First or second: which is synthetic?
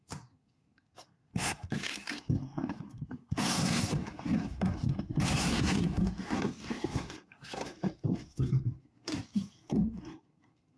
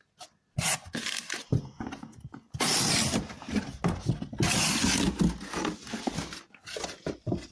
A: first